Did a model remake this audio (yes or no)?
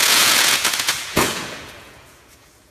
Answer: yes